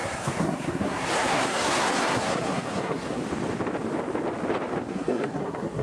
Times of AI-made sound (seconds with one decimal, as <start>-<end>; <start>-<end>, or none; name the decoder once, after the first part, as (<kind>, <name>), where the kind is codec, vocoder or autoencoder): 0.0-3.2 (codec, SNAC); 4.9-5.8